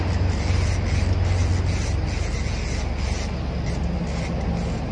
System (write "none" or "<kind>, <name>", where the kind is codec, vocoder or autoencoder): none